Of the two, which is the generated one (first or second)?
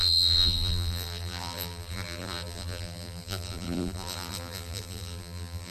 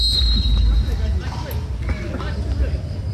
first